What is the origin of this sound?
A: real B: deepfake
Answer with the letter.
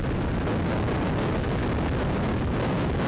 A